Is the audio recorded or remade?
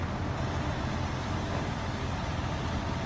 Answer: recorded